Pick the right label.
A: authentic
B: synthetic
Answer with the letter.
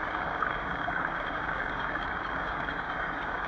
B